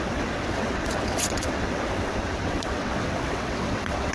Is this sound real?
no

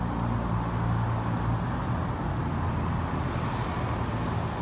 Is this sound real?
yes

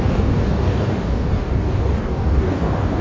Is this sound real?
no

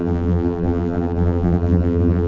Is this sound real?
no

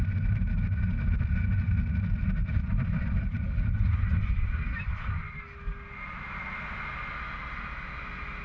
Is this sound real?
yes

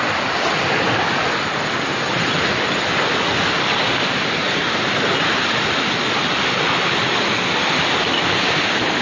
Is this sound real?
yes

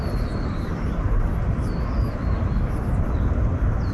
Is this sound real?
yes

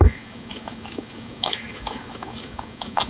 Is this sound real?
no